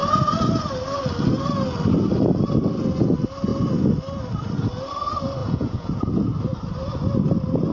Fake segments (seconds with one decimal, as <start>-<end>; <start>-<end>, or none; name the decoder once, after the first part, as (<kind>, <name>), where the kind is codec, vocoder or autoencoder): 5.4-6.1 (vocoder, Vocos)